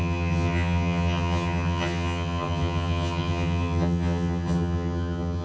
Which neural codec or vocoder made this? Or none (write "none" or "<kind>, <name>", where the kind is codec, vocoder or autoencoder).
vocoder, HiFi-GAN